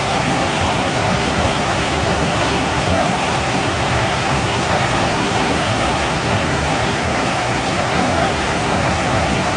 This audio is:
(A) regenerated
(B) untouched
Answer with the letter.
A